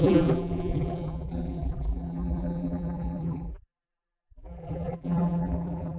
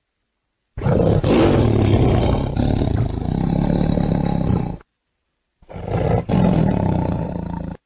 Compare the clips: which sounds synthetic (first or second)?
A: first